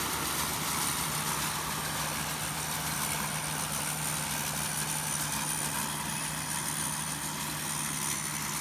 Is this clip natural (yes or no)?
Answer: yes